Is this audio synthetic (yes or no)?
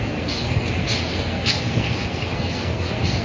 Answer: yes